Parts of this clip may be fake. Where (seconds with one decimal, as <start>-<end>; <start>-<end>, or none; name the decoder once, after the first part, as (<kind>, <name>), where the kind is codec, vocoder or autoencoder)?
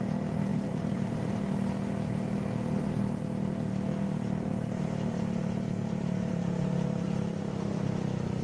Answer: 0.5-1.4 (vocoder, BigVGAN v2); 4.5-7.5